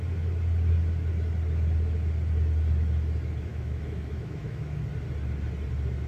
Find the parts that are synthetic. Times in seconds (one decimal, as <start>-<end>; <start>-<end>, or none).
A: 3.5-4.8

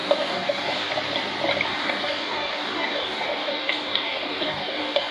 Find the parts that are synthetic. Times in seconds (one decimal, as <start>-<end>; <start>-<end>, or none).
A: 0.0-0.9; 1.7-5.1

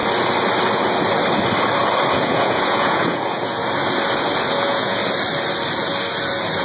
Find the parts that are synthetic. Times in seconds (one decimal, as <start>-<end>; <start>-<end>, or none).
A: 2.1-3.6; 4.5-5.0